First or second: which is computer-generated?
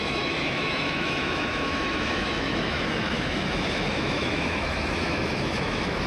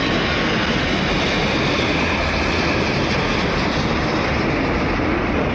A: first